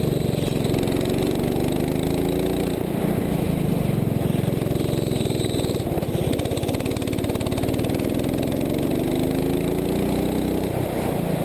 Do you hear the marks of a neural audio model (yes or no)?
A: no